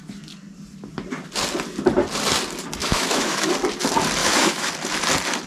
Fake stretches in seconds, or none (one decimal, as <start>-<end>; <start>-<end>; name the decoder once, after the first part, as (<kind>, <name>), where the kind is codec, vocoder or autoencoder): 2.8-3.5 (autoencoder, DAC-VAE); 4.2-4.7